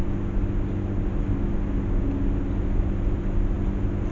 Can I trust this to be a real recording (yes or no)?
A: yes